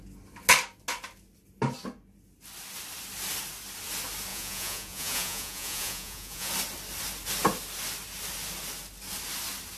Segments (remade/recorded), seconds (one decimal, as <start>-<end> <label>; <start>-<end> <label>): 0.0-4.3 recorded; 4.3-6.5 remade; 6.5-9.8 recorded